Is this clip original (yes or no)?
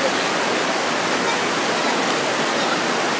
yes